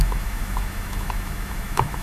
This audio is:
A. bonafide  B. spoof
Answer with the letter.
B